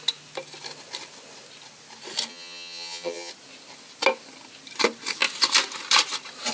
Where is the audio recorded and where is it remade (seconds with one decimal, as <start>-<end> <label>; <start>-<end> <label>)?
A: 0.0-2.3 recorded; 2.3-3.3 remade; 3.3-6.5 recorded